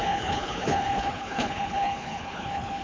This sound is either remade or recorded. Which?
remade